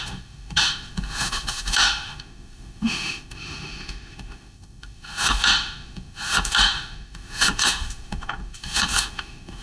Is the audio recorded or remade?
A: remade